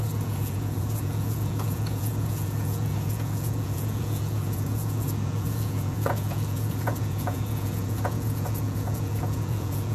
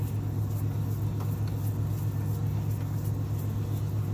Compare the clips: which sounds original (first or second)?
second